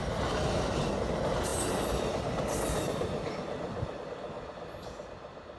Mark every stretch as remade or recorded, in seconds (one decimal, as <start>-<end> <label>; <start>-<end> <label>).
0.0-5.6 recorded